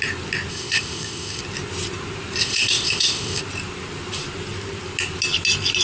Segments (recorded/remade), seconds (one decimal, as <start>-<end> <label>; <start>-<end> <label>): 0.0-0.5 recorded; 0.5-1.4 remade; 1.4-2.4 recorded; 2.4-3.4 remade; 3.4-5.8 recorded